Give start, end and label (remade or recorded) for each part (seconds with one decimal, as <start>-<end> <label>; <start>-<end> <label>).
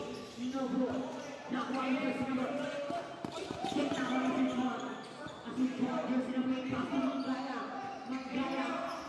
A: 0.0-1.4 recorded; 1.4-4.4 remade; 4.4-9.1 recorded